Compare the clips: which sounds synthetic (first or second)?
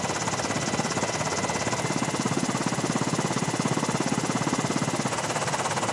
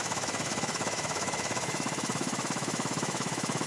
second